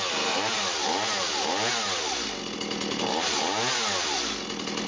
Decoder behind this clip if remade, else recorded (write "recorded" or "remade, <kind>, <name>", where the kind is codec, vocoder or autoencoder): recorded